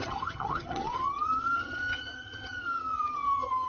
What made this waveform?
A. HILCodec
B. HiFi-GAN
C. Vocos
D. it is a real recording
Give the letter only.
B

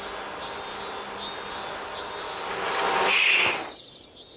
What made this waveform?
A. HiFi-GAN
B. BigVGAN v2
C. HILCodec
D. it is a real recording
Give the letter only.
D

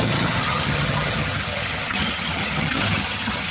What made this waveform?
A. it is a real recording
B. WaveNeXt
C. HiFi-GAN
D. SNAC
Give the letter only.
C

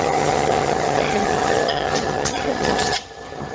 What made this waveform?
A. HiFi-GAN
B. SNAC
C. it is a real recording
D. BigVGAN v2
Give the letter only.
A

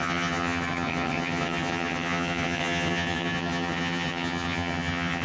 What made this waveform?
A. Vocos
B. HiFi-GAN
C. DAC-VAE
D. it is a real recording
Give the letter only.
B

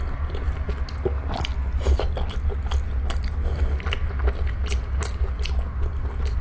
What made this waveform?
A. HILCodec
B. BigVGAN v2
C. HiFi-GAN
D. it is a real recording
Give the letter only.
D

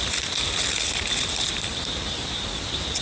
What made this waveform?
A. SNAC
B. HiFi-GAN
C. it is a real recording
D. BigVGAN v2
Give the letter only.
C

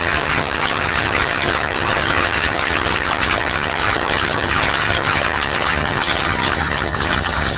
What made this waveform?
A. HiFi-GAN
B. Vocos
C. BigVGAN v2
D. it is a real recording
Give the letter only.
A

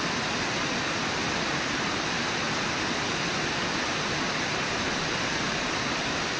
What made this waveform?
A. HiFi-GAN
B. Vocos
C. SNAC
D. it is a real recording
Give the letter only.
D